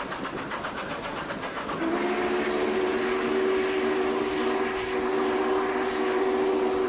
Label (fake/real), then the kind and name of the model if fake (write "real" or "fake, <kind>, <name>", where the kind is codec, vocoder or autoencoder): real